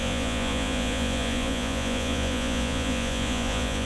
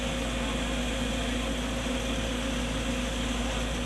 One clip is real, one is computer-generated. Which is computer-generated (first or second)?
first